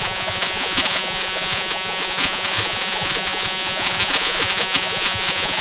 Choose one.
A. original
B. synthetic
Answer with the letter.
B